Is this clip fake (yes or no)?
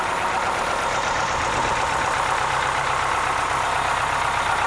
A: no